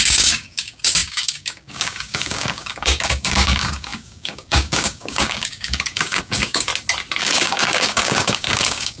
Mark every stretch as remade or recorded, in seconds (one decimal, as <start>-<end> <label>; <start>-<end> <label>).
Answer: 0.0-6.7 remade; 6.7-7.2 recorded; 7.2-9.0 remade